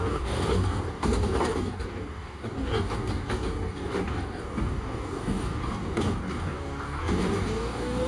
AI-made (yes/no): yes